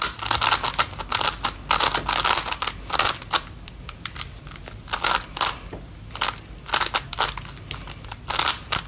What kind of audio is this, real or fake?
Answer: real